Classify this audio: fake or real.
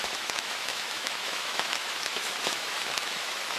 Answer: fake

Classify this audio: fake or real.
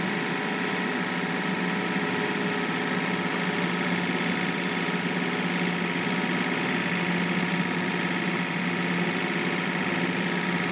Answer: real